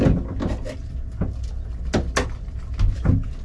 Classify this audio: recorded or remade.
recorded